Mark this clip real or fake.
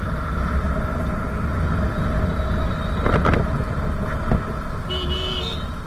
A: real